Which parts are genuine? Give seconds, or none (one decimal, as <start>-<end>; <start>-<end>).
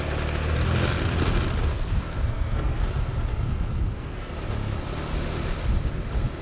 0.0-1.7; 2.8-3.3; 4.3-6.4